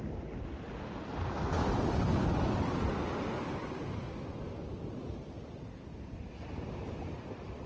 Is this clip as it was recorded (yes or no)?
yes